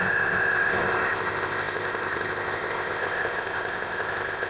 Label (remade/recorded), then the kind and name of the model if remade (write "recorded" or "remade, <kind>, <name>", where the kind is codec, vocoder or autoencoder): remade, codec, ZipCodec